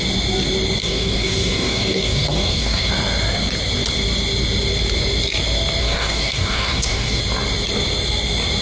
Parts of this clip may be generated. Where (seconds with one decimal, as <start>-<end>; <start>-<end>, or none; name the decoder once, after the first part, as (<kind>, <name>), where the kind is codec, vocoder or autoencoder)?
0.8-2.9 (codec, DAC); 5.8-7.2